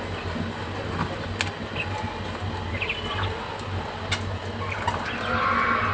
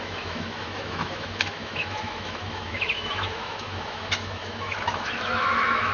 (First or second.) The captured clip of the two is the first